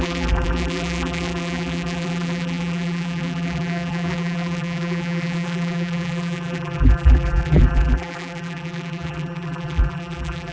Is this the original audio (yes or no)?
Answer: no